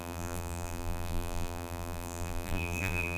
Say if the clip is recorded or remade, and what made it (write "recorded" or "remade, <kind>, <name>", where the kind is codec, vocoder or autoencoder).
remade, vocoder, BigVGAN v2